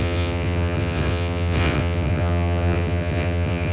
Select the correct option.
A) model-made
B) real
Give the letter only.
A